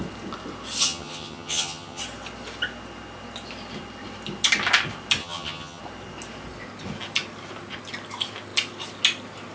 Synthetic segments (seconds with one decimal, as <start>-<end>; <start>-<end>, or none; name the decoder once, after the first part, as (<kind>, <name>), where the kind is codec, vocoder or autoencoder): 0.8-2.0 (vocoder, HiFi-GAN); 5.2-5.8